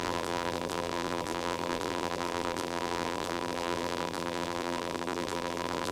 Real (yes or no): no